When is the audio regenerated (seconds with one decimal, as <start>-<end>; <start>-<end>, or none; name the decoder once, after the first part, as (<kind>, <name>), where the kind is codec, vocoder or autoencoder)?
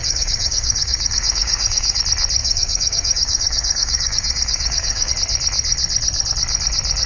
0.0-2.0 (codec, DAC); 2.4-5.1